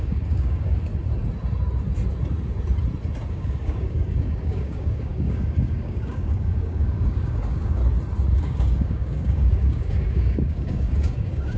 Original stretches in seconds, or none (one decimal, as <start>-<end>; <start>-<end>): 0.9-3.3; 7.8-8.4